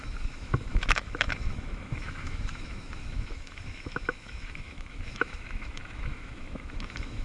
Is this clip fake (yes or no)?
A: yes